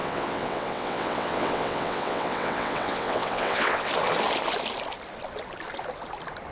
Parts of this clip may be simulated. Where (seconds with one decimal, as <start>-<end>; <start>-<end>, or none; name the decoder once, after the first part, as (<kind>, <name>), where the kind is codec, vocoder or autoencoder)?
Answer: 0.0-3.9 (vocoder, WaveNeXt)